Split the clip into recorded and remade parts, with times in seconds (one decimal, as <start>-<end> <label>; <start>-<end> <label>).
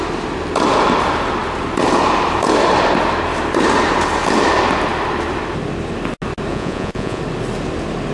0.0-6.5 recorded; 6.5-7.2 remade; 7.2-8.1 recorded